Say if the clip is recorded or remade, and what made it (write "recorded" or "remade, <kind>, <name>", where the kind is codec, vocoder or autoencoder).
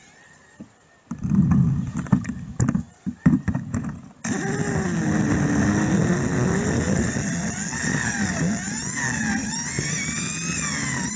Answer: recorded